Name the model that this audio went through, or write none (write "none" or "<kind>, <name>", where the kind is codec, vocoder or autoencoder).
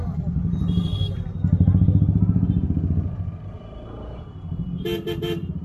none